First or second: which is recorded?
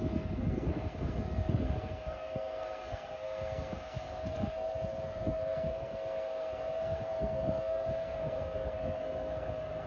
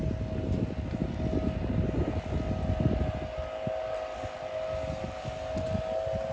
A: second